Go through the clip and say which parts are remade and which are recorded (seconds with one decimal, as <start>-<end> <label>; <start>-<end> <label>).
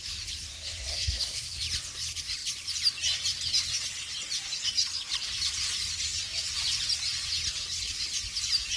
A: 0.0-0.5 recorded; 0.5-1.6 remade; 1.6-8.8 recorded